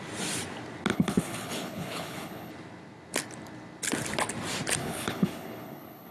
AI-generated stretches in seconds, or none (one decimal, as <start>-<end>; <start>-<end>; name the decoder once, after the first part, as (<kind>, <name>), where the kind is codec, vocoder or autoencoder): 0.9-2.5 (codec, HILCodec); 4.8-6.1